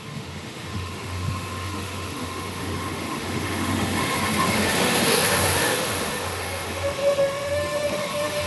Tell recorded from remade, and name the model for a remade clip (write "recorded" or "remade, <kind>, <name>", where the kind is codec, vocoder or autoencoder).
remade, autoencoder, DAC-VAE